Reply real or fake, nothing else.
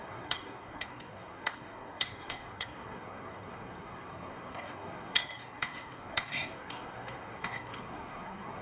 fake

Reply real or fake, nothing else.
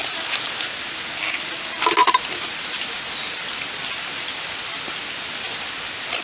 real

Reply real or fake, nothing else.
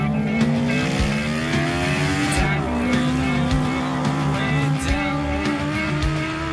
real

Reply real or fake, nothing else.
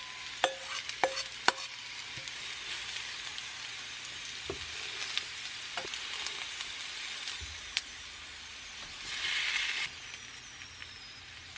real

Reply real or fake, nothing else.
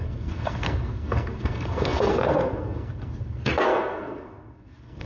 fake